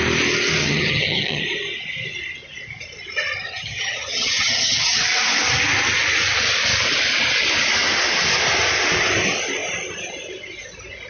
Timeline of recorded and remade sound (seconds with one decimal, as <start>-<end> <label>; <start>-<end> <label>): 0.0-0.6 recorded; 0.6-1.4 remade; 1.4-3.4 recorded; 3.4-5.0 remade; 5.0-11.1 recorded